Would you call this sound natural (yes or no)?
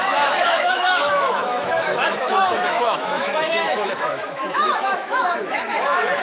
no